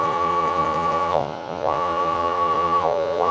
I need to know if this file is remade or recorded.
remade